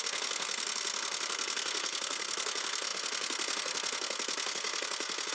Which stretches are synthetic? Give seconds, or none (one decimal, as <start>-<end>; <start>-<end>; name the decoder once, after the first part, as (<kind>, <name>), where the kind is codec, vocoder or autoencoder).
0.0-5.3 (codec, SNAC)